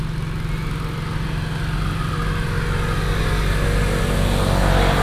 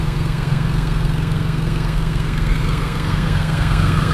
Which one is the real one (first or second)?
first